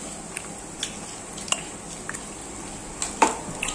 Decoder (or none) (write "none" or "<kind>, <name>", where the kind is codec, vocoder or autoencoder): none